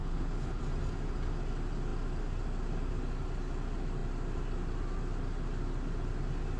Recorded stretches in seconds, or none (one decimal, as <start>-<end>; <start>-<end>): 0.6-6.6